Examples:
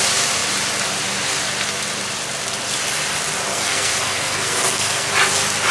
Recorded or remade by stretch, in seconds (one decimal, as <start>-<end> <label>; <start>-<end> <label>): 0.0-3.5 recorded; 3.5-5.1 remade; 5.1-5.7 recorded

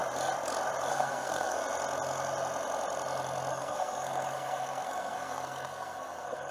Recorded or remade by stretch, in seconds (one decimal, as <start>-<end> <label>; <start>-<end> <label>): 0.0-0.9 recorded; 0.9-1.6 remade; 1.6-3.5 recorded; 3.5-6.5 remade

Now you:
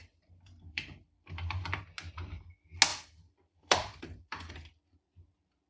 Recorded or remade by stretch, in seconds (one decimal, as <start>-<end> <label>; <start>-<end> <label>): 0.0-1.8 remade; 1.8-2.9 recorded; 2.9-4.5 remade; 4.5-5.7 recorded